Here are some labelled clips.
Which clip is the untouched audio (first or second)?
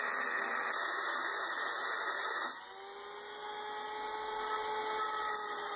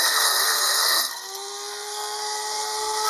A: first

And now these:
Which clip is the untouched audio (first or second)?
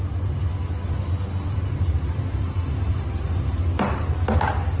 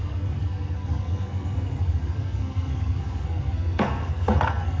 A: first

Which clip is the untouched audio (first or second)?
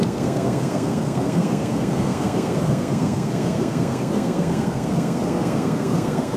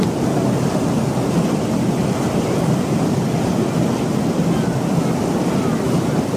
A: second